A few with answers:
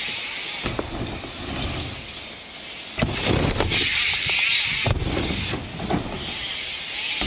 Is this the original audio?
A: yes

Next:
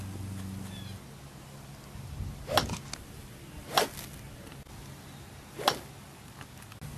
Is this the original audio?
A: yes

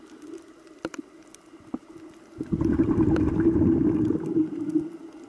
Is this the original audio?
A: yes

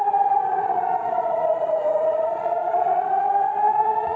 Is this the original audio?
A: no